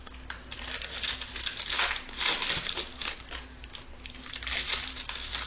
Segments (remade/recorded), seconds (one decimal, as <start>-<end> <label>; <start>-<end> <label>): 0.0-5.5 recorded